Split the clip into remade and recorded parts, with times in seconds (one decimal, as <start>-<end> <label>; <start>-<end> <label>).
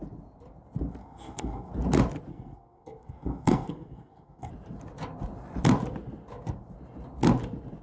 0.0-1.0 recorded; 1.0-1.7 remade; 1.7-2.3 recorded; 2.3-4.5 remade; 4.5-7.8 recorded